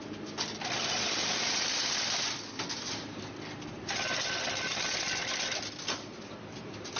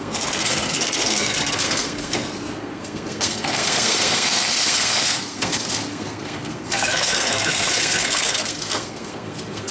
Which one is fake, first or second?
second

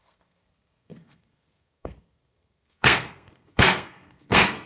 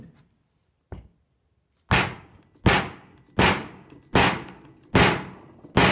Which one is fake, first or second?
first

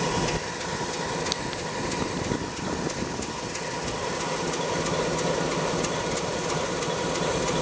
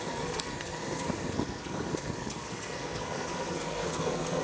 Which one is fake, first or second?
second